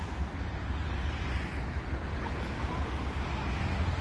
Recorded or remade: recorded